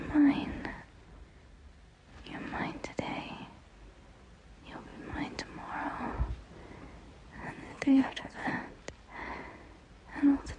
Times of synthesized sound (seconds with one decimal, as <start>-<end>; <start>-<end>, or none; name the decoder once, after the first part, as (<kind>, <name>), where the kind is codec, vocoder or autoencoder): 7.7-8.5 (codec, HILCodec)